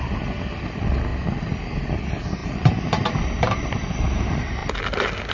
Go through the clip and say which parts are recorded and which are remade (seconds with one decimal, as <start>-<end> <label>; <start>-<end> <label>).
0.0-4.6 recorded; 4.6-5.3 remade